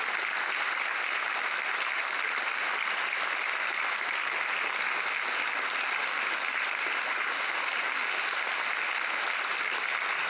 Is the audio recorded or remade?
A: remade